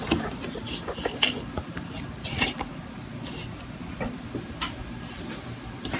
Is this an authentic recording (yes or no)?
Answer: yes